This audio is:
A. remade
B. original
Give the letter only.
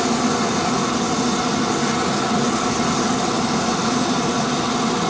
B